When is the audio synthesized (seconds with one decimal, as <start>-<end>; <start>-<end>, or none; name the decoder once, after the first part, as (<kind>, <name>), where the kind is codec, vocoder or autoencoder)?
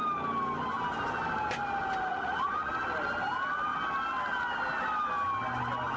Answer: 2.1-2.7 (vocoder, Vocos)